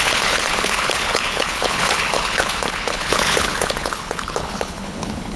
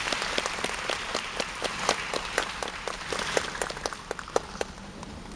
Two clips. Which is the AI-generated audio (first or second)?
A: first